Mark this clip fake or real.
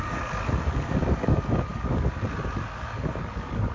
fake